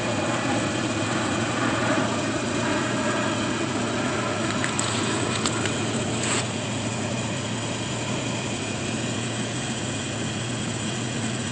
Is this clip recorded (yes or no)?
no